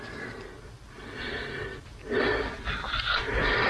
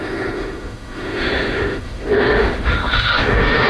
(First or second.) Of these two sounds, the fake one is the second